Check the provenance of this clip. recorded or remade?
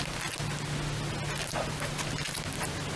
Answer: recorded